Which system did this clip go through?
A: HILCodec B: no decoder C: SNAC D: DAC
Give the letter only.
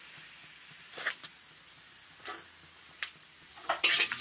B